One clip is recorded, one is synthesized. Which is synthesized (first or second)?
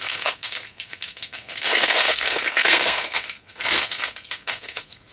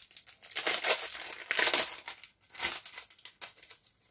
first